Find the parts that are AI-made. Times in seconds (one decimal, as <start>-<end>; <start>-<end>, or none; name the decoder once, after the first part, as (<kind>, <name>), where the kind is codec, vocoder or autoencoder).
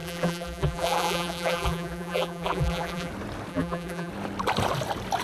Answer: 0.0-3.1 (vocoder, BigVGAN v2); 3.5-4.1